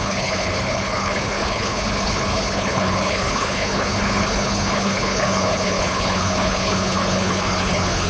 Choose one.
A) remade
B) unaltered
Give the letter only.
A